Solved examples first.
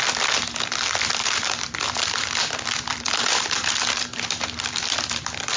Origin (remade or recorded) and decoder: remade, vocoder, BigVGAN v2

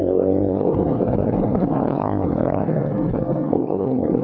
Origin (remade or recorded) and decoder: remade, codec, SNAC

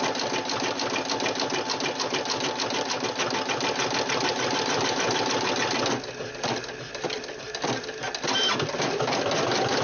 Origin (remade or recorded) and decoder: recorded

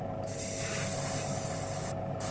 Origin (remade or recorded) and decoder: recorded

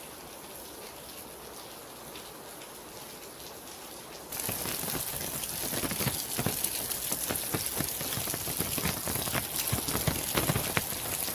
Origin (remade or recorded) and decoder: recorded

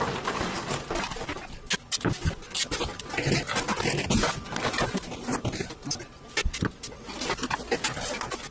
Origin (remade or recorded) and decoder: recorded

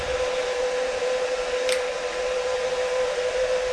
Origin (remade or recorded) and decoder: recorded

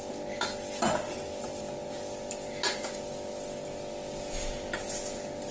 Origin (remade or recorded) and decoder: recorded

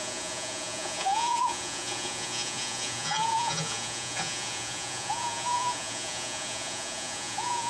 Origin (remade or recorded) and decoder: remade, vocoder, Vocos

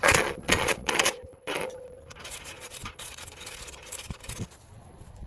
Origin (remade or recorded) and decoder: remade, vocoder, Vocos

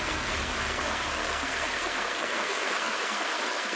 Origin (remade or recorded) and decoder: remade, codec, SNAC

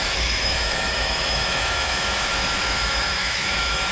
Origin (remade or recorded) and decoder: remade, autoencoder, DAC-VAE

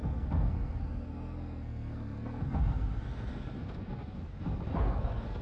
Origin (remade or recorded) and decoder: remade, codec, SNAC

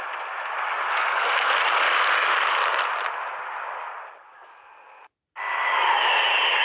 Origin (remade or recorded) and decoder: recorded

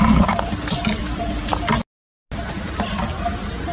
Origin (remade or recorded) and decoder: recorded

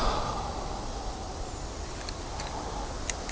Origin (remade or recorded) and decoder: recorded